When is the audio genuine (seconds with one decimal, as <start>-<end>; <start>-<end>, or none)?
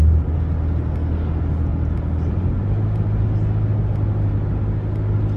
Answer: 0.0-5.4